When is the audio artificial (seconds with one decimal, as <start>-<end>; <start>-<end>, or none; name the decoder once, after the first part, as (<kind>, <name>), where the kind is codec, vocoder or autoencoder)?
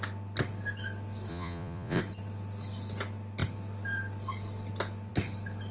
1.3-2.0 (vocoder, Vocos)